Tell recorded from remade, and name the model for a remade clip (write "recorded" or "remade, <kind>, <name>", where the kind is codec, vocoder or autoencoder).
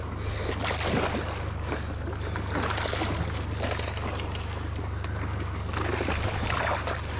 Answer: recorded